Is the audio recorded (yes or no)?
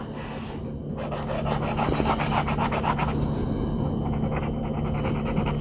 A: yes